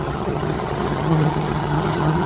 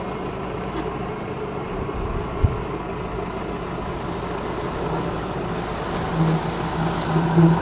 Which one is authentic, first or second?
second